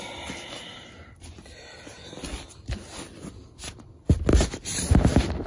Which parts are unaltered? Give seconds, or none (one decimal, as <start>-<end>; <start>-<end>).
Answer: 0.0-5.5